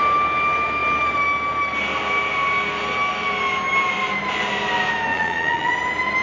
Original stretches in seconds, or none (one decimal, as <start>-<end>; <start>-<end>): 0.0-5.1; 5.7-6.2